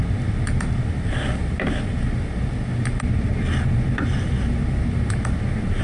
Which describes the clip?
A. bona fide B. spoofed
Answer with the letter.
A